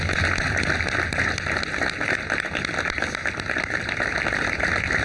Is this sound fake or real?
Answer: real